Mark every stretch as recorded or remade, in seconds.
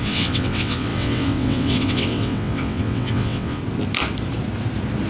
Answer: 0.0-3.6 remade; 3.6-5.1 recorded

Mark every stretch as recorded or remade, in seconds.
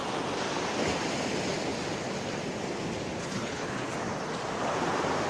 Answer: 0.0-3.2 recorded; 3.2-3.9 remade; 3.9-5.3 recorded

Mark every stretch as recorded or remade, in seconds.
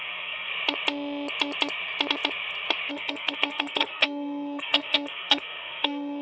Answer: 0.0-0.5 remade; 0.5-2.9 recorded; 2.9-6.2 remade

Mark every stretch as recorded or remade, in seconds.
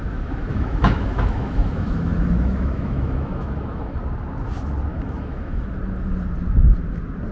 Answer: 0.0-4.0 remade; 4.0-4.9 recorded; 4.9-5.8 remade; 5.8-7.3 recorded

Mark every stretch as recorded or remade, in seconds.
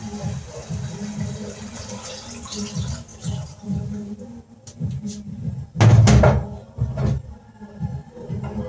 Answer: 0.0-3.1 recorded; 3.1-4.2 remade; 4.2-8.7 recorded